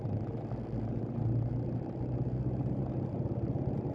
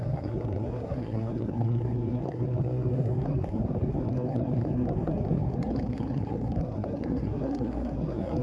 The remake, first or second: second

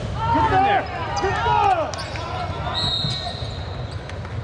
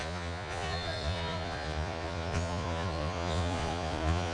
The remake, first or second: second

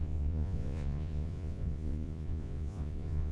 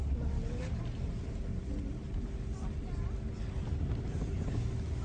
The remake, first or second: first